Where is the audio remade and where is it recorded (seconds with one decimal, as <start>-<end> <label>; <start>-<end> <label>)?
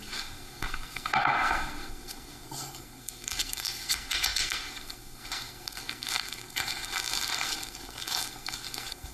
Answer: 0.0-9.1 remade